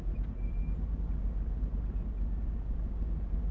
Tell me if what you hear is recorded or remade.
recorded